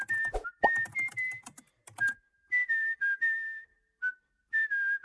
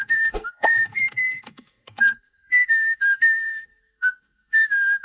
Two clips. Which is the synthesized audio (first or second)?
second